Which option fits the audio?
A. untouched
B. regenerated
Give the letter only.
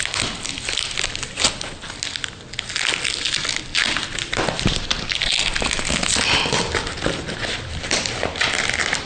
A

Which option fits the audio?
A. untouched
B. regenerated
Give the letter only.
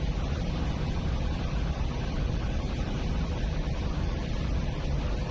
A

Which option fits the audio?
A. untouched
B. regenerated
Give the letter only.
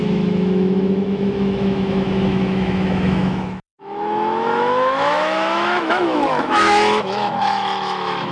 B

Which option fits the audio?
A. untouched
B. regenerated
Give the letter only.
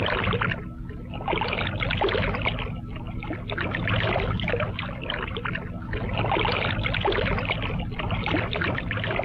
A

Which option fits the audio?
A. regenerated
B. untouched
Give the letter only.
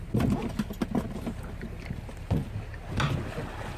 B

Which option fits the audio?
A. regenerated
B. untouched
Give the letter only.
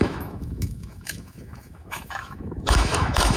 A